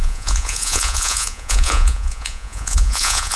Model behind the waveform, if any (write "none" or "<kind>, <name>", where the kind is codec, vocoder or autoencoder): vocoder, Vocos